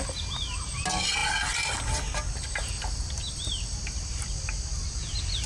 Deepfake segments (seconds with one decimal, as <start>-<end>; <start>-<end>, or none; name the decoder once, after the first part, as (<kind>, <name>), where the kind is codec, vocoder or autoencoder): none